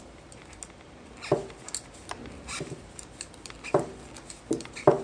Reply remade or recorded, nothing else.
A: recorded